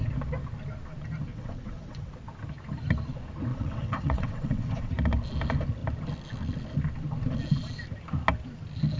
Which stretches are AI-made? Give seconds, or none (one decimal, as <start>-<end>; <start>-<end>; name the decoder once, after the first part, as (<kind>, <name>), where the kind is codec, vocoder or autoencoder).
1.3-2.1 (vocoder, WaveNeXt); 3.5-4.9